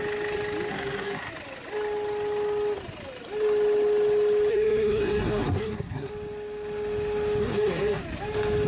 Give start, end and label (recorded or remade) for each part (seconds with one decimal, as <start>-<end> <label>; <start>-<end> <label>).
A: 0.0-0.7 recorded; 0.7-1.3 remade; 1.3-4.5 recorded; 4.5-6.1 remade; 6.1-7.4 recorded; 7.4-8.0 remade; 8.0-8.7 recorded